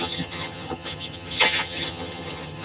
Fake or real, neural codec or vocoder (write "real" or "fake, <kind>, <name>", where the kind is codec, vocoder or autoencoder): fake, vocoder, HiFi-GAN